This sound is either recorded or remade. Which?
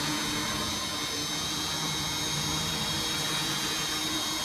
remade